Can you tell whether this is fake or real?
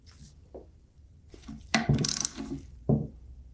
fake